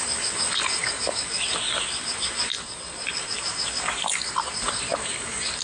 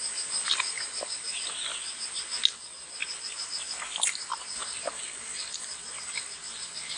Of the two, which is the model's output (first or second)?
first